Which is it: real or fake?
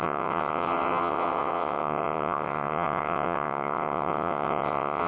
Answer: fake